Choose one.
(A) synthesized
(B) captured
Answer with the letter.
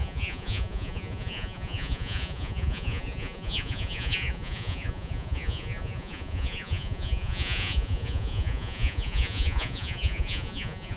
A